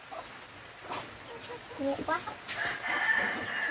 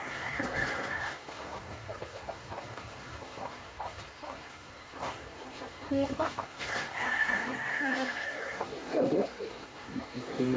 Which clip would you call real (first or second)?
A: first